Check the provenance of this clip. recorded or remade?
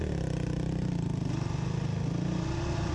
recorded